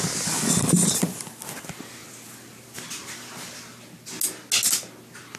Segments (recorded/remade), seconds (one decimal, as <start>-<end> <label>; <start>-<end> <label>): 0.0-5.4 recorded

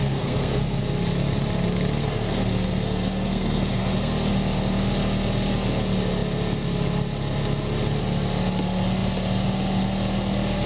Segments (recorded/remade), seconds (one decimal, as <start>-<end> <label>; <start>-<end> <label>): 0.0-0.8 remade; 0.8-2.0 recorded; 2.0-4.3 remade; 4.3-10.7 recorded

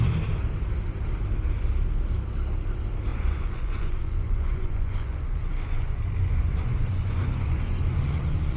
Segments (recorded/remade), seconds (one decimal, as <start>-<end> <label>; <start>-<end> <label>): 0.0-3.1 recorded; 3.1-8.6 remade

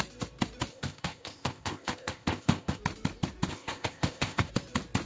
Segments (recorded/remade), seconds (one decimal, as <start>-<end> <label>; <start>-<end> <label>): 0.0-0.7 recorded; 0.7-2.8 remade; 2.8-3.5 recorded; 3.5-4.5 remade; 4.5-5.1 recorded

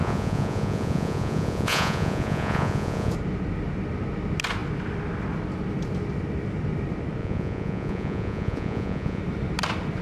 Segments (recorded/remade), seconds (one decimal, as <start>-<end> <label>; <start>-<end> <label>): 0.0-3.1 remade; 3.1-7.2 recorded; 7.2-9.2 remade; 9.2-10.0 recorded

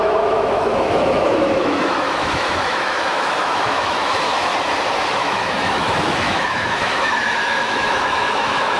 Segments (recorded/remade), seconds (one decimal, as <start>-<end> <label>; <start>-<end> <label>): 0.0-4.5 remade; 4.5-5.1 recorded; 5.1-8.8 remade

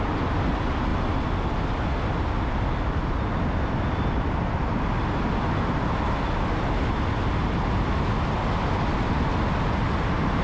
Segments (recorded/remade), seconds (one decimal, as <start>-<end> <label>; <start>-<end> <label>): 0.0-10.4 recorded

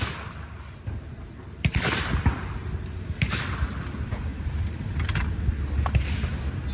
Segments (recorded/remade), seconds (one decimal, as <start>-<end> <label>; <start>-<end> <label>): 0.0-6.7 recorded